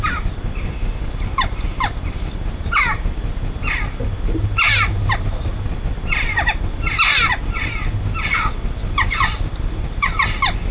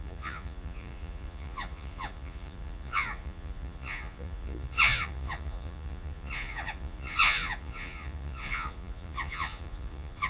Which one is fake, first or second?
second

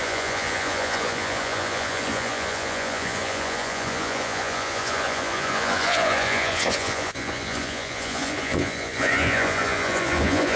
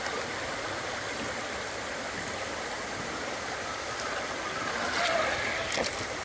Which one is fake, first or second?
first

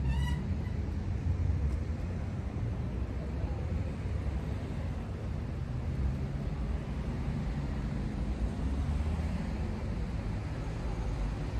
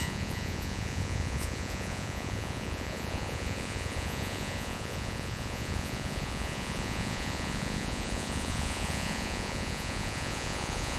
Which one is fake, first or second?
second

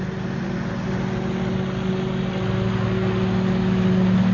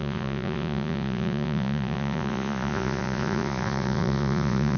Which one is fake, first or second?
second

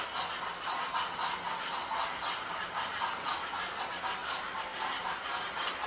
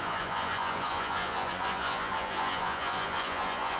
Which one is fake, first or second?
second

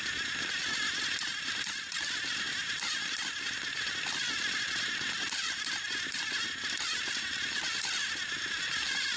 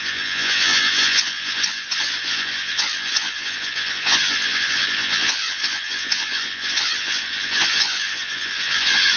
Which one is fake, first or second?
second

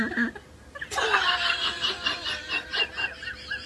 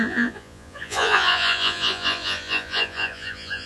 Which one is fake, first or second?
second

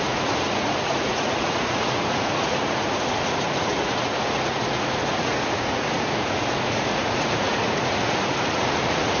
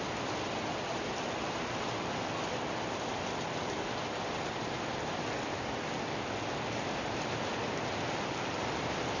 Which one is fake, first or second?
first